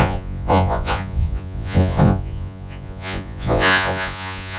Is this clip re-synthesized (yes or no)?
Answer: yes